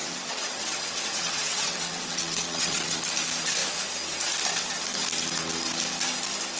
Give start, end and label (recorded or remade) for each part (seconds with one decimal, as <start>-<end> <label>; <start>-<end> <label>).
0.0-3.0 remade; 3.0-6.6 recorded